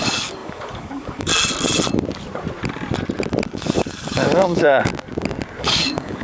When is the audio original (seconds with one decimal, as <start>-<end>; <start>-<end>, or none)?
1.3-3.5; 4.9-5.6